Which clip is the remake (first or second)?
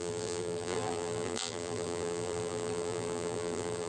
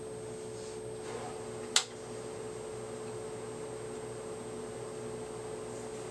first